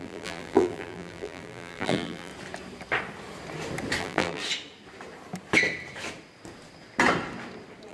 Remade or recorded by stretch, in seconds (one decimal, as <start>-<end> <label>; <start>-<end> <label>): 0.0-2.3 remade; 2.3-4.0 recorded; 4.0-4.4 remade; 4.4-7.9 recorded